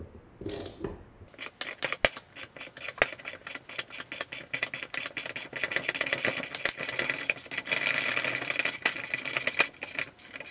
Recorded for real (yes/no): yes